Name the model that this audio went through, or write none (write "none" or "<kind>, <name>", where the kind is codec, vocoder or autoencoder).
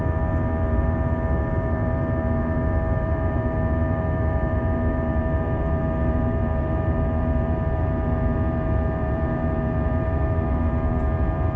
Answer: vocoder, BigVGAN v2